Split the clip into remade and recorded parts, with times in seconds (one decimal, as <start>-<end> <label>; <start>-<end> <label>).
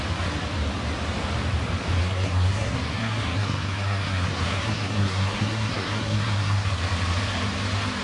0.0-2.0 recorded; 2.0-6.8 remade; 6.8-8.0 recorded